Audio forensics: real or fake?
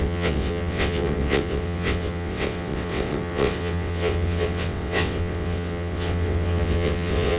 fake